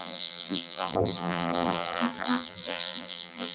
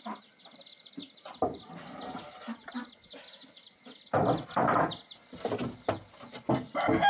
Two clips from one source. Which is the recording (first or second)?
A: second